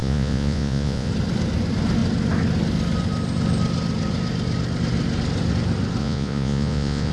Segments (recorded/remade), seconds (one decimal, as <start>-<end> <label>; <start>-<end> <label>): 0.0-1.1 remade; 1.1-6.0 recorded; 6.0-7.1 remade